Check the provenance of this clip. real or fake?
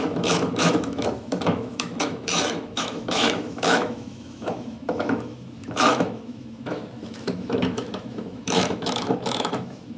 fake